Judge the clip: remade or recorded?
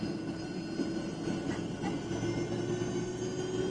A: recorded